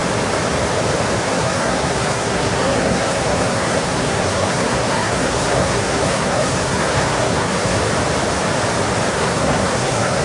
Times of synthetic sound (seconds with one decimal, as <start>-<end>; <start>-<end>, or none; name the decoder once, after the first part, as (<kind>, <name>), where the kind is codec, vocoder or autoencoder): 1.2-7.8 (codec, SNAC); 9.1-10.2